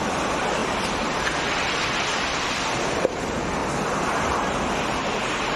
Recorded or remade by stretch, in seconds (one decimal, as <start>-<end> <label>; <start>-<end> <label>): 0.0-0.6 recorded; 0.6-3.2 remade; 3.2-5.6 recorded